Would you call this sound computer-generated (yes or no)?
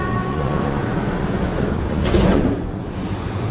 yes